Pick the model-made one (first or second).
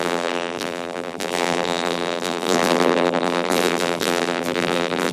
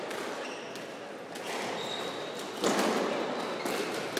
first